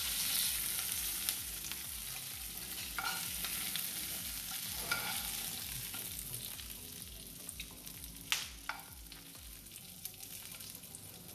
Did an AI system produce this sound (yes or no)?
no